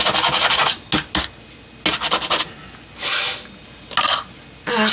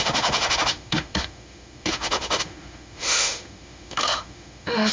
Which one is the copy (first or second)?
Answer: second